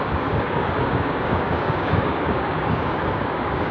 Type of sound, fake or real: fake